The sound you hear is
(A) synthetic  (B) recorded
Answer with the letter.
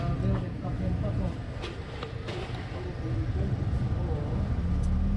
B